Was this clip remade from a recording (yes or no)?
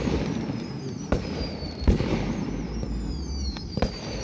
no